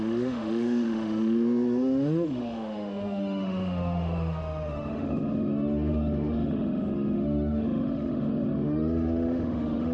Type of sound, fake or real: fake